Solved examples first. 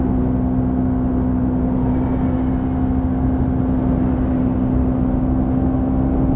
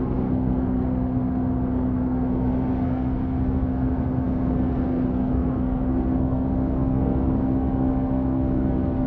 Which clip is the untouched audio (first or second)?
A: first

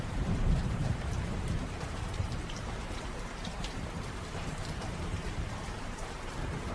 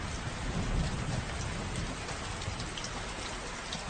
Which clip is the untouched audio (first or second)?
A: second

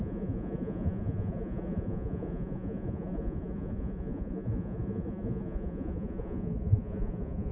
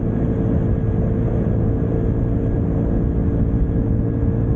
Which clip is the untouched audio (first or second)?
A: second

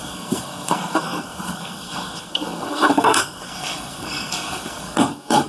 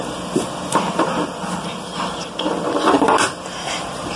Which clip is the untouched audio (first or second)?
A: second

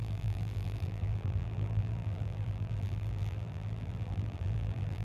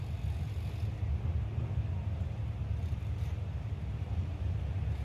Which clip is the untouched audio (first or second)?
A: second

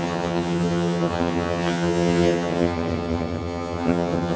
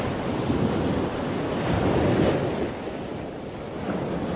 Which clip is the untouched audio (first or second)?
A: second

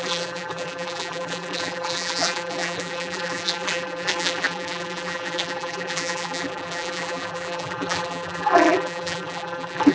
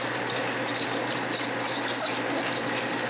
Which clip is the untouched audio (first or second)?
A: second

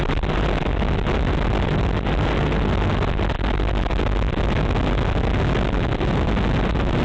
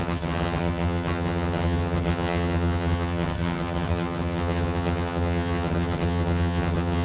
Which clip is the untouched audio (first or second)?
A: first